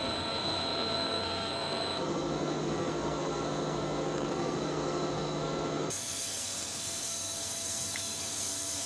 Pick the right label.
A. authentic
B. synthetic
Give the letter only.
B